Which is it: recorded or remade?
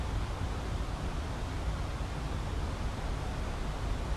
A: recorded